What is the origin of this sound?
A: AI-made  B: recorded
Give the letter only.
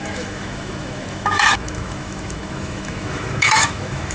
A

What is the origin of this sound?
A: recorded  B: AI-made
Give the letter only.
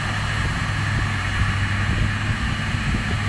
A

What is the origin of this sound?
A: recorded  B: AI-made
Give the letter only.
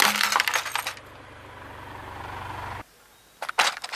A